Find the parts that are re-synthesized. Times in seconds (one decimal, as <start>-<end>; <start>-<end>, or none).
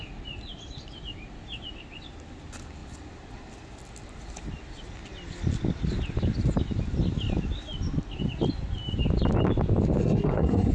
10.0-10.7